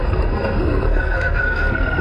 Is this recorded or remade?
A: remade